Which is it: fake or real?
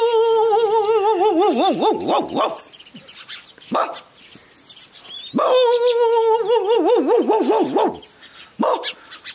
real